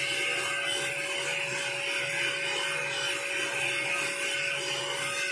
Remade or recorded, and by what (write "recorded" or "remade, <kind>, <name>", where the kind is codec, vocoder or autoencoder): recorded